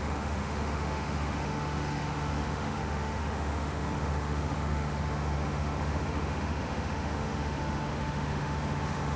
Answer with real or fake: fake